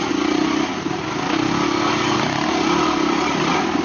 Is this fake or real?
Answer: real